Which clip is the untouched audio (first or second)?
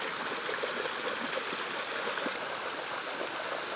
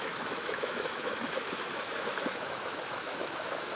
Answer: first